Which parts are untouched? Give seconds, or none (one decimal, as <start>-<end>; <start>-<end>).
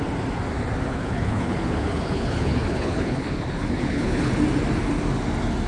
0.0-0.9; 4.3-5.7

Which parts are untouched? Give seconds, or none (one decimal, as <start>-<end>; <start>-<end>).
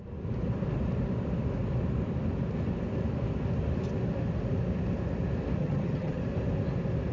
0.0-5.6; 6.2-7.1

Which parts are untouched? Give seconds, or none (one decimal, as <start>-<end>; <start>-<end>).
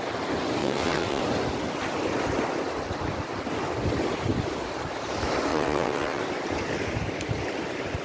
0.0-0.6; 1.2-5.5; 6.2-8.0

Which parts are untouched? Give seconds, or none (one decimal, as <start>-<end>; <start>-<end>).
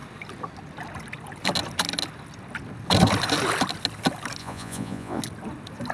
0.0-4.4; 5.2-5.9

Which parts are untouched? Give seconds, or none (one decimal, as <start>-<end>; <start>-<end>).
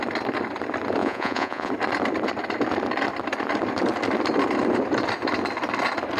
0.0-1.0; 1.7-6.2